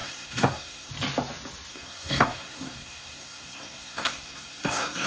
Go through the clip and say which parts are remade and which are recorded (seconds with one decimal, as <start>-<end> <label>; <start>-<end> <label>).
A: 0.0-0.9 remade; 0.9-1.7 recorded; 1.7-5.1 remade